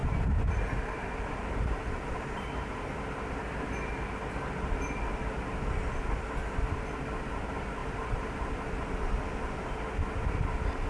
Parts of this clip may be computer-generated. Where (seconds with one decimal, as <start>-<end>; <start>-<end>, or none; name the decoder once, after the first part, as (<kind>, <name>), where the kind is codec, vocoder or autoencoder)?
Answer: 0.0-3.0 (vocoder, BigVGAN v2); 7.8-8.5